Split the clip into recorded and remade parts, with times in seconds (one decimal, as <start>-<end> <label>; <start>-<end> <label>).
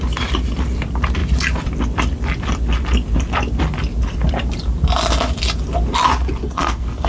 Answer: 0.0-6.4 recorded; 6.4-7.1 remade